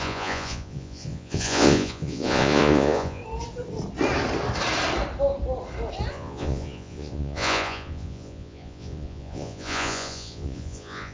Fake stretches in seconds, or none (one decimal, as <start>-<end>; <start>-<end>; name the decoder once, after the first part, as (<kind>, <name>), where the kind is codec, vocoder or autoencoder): 0.0-3.2 (vocoder, Vocos); 6.1-11.1